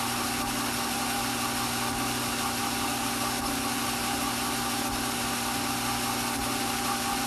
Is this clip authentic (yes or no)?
yes